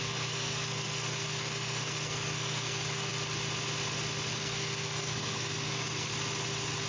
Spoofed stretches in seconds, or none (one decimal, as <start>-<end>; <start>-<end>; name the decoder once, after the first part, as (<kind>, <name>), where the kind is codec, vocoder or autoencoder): 0.0-3.1 (codec, SNAC); 4.3-6.1